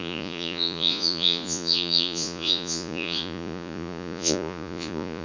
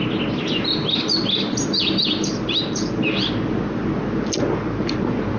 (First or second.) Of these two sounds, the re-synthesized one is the first